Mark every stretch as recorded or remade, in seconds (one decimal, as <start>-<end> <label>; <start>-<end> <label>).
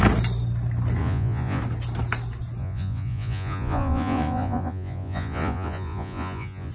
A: 0.0-1.0 recorded; 1.0-1.6 remade; 1.6-2.6 recorded; 2.6-6.7 remade